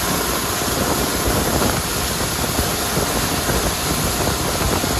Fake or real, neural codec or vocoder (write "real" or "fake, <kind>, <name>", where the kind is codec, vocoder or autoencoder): real